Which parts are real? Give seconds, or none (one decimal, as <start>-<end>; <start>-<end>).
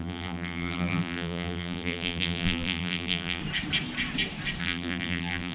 3.4-4.6